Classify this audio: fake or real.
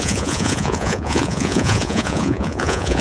fake